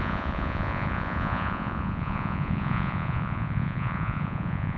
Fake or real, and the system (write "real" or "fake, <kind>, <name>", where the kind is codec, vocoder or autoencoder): fake, vocoder, Vocos